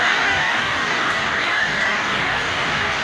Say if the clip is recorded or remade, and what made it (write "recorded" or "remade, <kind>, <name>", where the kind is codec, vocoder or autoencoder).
remade, codec, DAC